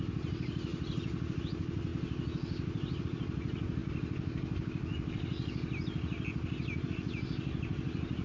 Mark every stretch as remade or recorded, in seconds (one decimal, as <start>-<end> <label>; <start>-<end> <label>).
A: 0.0-8.2 recorded